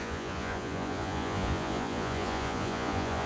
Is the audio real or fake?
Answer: fake